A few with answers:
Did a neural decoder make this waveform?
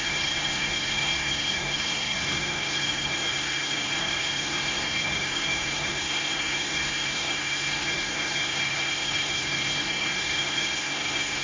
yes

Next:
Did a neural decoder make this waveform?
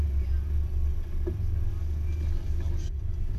no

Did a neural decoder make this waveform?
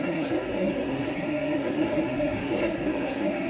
yes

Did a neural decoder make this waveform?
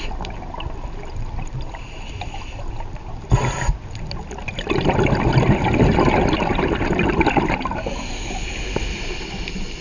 no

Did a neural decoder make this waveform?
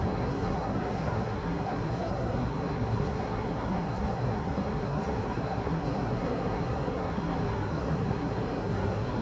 yes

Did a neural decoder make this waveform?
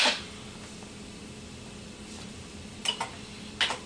no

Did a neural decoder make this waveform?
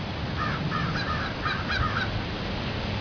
no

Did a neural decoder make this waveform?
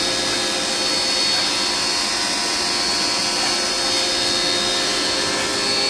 no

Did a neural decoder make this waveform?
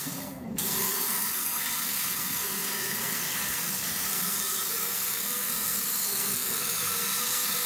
yes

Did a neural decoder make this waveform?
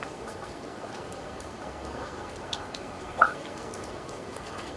yes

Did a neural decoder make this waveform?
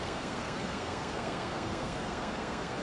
yes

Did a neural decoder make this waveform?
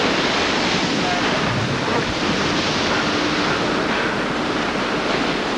no